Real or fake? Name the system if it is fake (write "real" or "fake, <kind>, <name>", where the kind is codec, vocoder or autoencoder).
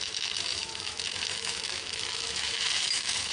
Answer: fake, autoencoder, DAC-VAE